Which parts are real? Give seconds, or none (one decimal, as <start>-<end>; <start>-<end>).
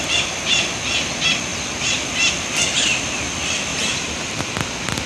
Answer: 0.0-3.7; 4.4-5.1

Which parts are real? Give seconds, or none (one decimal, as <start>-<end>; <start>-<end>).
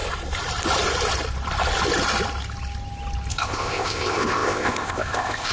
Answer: 0.0-3.3